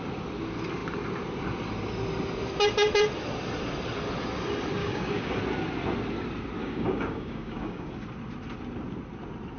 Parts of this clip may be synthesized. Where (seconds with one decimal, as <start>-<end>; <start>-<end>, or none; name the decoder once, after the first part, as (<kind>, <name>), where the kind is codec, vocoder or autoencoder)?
4.8-5.4 (codec, DAC); 6.6-7.9